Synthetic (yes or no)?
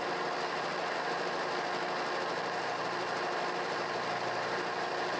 no